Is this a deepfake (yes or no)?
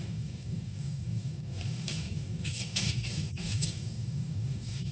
yes